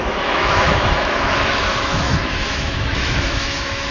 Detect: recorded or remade remade